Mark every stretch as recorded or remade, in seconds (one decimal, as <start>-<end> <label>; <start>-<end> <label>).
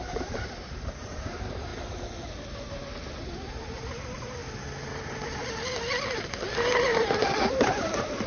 0.0-1.7 remade; 1.7-3.2 recorded; 3.2-4.4 remade; 4.4-4.9 recorded; 4.9-5.4 remade; 5.4-7.0 recorded; 7.0-8.3 remade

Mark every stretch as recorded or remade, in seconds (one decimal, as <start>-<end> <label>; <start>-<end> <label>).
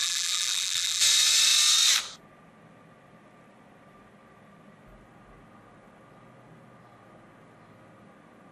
0.0-1.0 remade; 1.0-8.5 recorded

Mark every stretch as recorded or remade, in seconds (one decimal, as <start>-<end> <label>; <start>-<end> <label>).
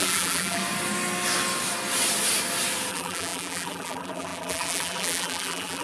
0.0-0.6 remade; 0.6-2.9 recorded; 2.9-5.8 remade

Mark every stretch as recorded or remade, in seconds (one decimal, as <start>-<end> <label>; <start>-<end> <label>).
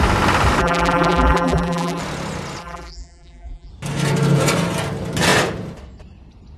0.0-0.6 recorded; 0.6-2.0 remade; 2.0-2.6 recorded; 2.6-3.7 remade; 3.7-6.6 recorded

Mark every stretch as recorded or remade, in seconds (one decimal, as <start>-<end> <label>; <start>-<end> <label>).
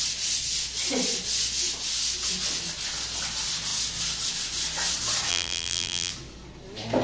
0.0-5.3 recorded; 5.3-6.1 remade; 6.1-7.0 recorded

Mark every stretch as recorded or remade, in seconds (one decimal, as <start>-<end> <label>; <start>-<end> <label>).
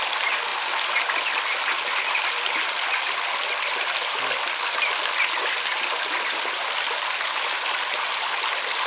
0.0-8.9 recorded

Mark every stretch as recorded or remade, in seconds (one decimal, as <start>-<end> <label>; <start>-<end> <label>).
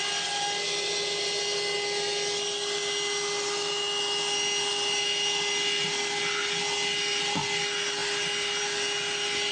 0.0-9.5 recorded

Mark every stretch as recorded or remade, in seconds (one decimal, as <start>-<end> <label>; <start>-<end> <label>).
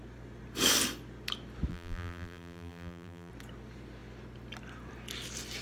0.0-1.7 recorded; 1.7-3.3 remade; 3.3-5.6 recorded